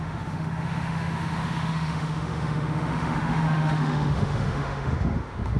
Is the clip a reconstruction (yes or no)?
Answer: yes